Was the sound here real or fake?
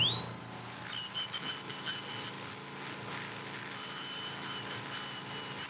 real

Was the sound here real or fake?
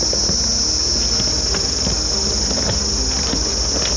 real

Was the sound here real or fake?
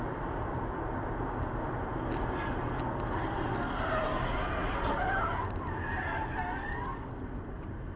real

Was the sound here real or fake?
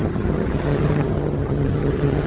fake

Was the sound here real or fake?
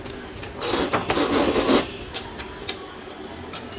real